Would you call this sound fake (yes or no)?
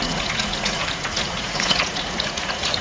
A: yes